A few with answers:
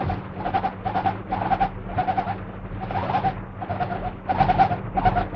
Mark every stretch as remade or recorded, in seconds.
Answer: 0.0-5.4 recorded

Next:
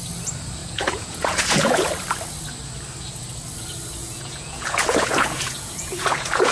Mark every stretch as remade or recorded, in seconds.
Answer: 0.0-0.6 recorded; 0.6-1.9 remade; 1.9-4.0 recorded; 4.0-6.5 remade

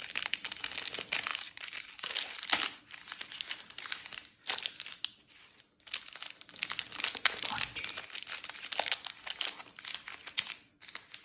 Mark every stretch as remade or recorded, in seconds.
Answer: 0.0-11.2 recorded

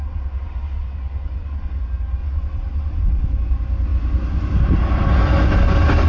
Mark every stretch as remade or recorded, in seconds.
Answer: 0.0-1.8 remade; 1.8-2.2 recorded; 2.2-3.0 remade; 3.0-6.1 recorded

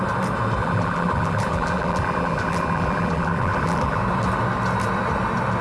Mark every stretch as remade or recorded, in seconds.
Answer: 0.0-0.6 recorded; 0.6-4.0 remade; 4.0-5.6 recorded

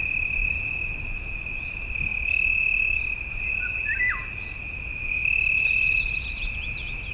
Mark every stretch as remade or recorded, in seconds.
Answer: 0.0-7.1 recorded

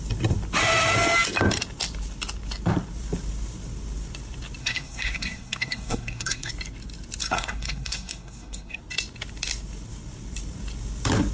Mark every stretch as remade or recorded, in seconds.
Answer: 0.0-4.6 recorded; 4.6-6.5 remade; 6.5-7.2 recorded; 7.2-8.8 remade; 8.8-11.3 recorded

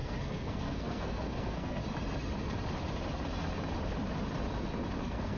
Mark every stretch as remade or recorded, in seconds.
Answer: 0.0-1.8 remade; 1.8-5.0 recorded; 5.0-5.4 remade